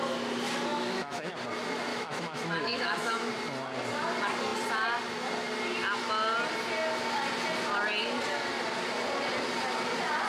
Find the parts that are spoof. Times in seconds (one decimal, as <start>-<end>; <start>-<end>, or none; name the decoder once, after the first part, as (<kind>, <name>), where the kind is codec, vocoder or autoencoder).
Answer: 0.7-1.3 (autoencoder, DAC-VAE); 1.9-3.3